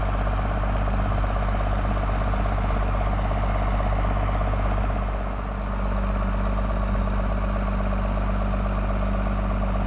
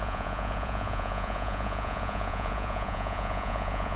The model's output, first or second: second